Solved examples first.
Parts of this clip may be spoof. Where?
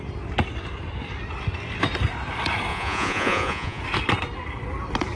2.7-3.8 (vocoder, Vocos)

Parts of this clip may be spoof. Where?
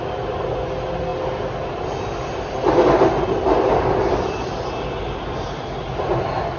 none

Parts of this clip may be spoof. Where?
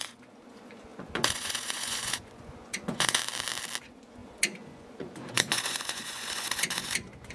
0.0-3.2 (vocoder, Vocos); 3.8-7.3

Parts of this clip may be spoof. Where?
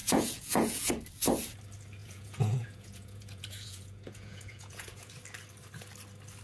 0.0-0.9 (vocoder, Vocos); 2.0-5.1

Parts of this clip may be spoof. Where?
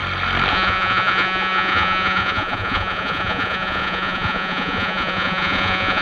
0.5-6.0 (vocoder, Vocos)